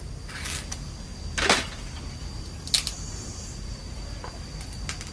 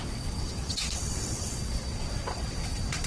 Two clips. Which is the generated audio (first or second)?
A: second